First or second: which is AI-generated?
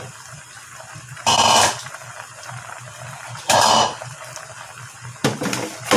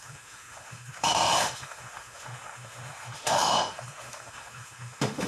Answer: second